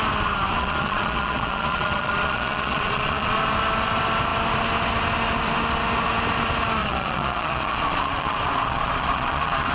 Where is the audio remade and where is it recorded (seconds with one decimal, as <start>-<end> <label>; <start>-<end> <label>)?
0.0-0.5 recorded; 0.5-3.4 remade; 3.4-6.8 recorded; 6.8-9.7 remade